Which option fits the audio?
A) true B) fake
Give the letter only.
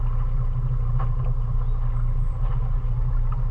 A